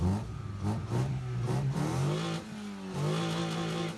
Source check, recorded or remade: recorded